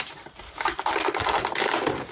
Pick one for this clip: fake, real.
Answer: fake